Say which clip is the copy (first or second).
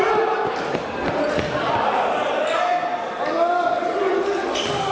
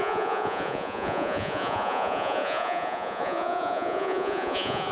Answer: second